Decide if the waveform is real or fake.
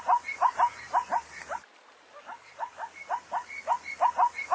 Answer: real